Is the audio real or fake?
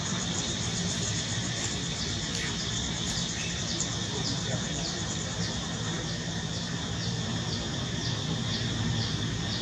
fake